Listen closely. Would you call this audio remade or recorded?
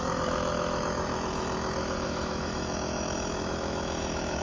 remade